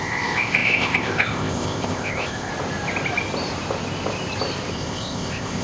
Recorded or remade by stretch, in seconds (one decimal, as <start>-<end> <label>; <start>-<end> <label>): 0.0-2.5 remade; 2.5-4.7 recorded; 4.7-5.6 remade